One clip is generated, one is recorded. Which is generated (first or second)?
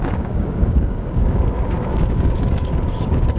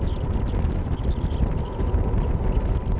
first